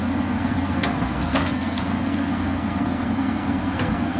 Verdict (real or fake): fake